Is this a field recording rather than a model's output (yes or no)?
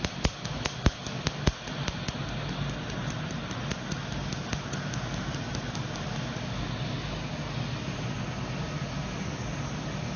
yes